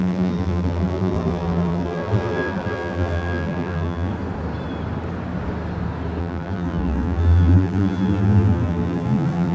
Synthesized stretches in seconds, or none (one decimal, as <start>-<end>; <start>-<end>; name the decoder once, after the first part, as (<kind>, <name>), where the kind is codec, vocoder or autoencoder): 0.0-4.1 (vocoder, BigVGAN v2); 6.2-9.5